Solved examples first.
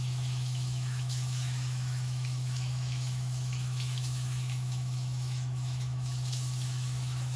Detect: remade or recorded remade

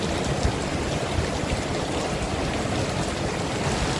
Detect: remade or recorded recorded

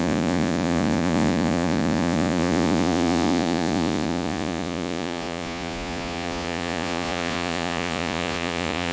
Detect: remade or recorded remade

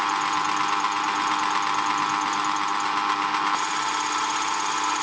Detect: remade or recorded recorded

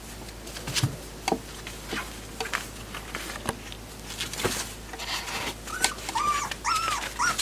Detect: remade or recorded recorded